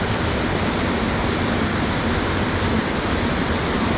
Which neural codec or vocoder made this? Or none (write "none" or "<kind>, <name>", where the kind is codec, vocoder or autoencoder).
none